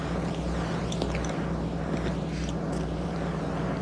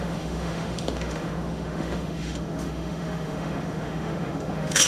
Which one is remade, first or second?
second